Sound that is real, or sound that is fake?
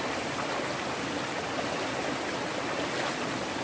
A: real